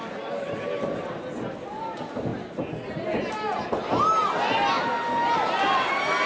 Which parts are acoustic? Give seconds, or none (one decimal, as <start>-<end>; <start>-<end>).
0.0-6.3